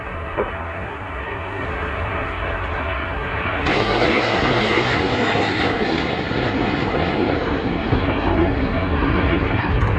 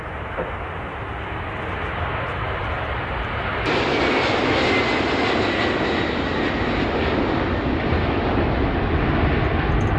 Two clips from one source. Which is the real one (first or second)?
second